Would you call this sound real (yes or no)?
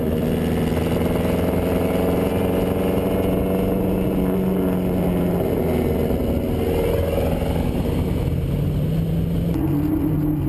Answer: yes